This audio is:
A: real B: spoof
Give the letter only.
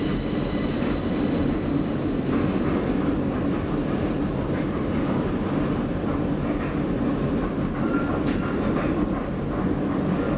B